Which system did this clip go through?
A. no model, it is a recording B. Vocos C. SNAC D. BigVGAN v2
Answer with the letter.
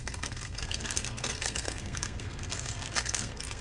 C